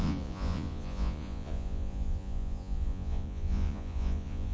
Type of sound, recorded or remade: remade